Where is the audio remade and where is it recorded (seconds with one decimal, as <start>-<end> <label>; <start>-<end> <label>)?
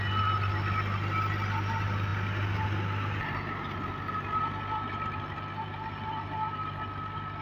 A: 0.0-7.4 recorded